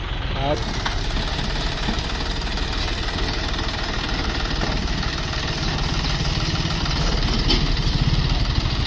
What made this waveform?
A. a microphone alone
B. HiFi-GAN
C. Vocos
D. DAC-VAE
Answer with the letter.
A